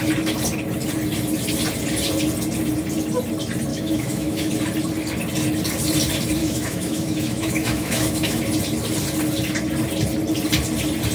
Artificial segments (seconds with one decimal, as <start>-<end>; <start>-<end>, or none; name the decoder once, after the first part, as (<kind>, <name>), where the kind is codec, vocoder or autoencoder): 3.7-4.5 (autoencoder, DAC-VAE); 6.4-8.4